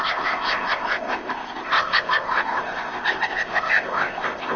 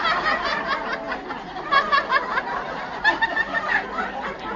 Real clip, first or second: second